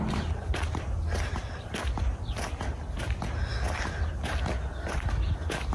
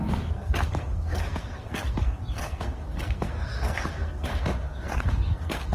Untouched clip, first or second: first